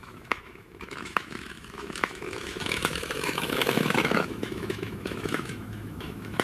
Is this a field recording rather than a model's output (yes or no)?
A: no